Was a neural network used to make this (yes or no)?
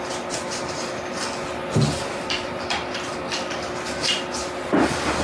no